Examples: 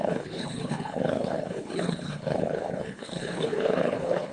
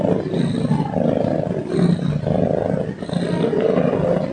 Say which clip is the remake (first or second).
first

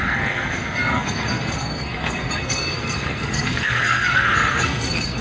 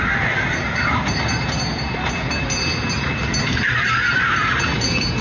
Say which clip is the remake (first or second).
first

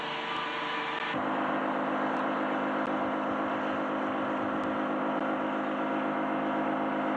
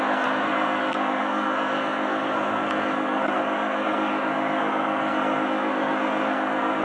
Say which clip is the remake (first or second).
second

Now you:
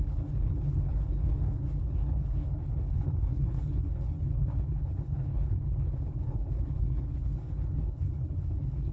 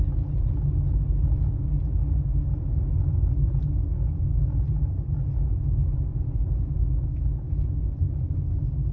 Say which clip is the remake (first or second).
first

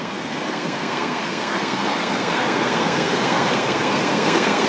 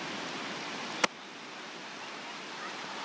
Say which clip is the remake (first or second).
first